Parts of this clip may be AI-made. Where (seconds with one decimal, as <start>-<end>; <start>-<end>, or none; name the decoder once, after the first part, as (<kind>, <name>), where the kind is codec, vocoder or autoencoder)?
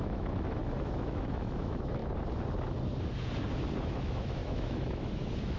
0.0-2.0 (autoencoder, DAC-VAE); 3.8-5.6